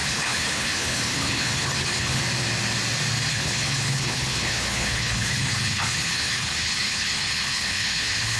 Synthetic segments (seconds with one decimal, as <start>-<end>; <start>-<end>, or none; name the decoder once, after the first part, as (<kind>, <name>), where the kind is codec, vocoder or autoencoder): 0.0-2.2 (codec, HILCodec); 3.3-8.4